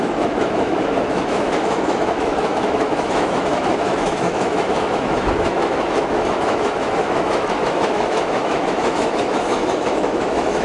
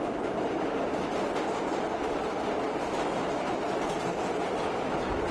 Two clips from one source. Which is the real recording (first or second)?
second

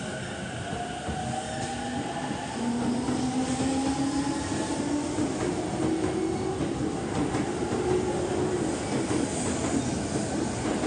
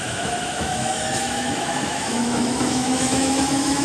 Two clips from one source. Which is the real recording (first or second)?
first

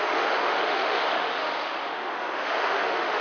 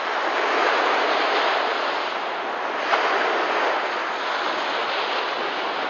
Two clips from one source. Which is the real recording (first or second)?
second